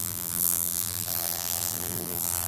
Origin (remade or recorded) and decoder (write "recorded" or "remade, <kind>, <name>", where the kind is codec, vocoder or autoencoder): remade, vocoder, BigVGAN v2